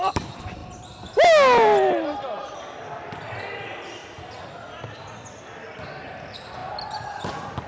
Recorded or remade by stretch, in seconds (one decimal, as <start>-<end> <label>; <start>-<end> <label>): 0.0-7.7 recorded